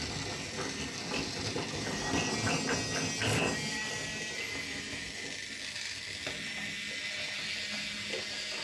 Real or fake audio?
real